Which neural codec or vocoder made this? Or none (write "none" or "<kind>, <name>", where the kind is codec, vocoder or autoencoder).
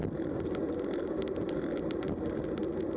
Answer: none